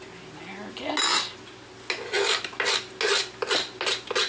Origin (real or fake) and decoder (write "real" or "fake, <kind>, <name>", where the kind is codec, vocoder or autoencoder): real